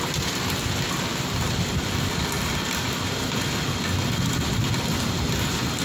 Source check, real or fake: real